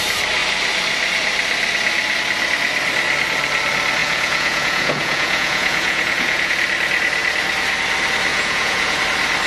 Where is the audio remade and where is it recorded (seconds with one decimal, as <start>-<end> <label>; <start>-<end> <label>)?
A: 0.0-4.0 recorded; 4.0-6.5 remade; 6.5-8.3 recorded; 8.3-9.0 remade; 9.0-9.5 recorded